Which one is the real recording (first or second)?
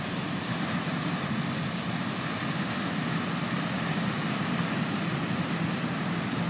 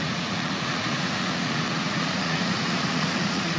first